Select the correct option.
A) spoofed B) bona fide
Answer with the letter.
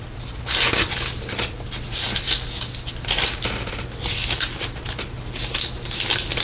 B